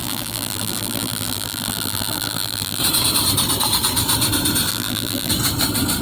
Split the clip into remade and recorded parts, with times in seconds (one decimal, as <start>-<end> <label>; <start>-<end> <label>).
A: 0.0-2.8 remade; 2.8-4.7 recorded; 4.7-5.3 remade; 5.3-6.0 recorded

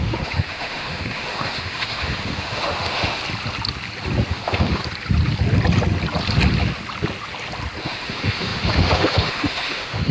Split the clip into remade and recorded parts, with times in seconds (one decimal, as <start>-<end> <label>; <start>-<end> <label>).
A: 0.0-3.2 remade; 3.2-4.3 recorded; 4.3-4.8 remade; 4.8-7.8 recorded; 7.8-10.1 remade

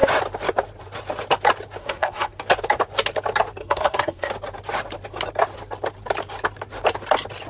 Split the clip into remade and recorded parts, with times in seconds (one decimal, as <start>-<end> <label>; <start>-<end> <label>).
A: 0.0-1.8 recorded; 1.8-2.4 remade; 2.4-3.6 recorded; 3.6-4.3 remade; 4.3-7.5 recorded

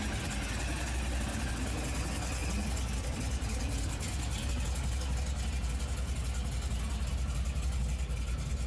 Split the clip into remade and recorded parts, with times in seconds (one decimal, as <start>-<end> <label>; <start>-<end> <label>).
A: 0.0-2.4 recorded; 2.4-4.5 remade; 4.5-8.7 recorded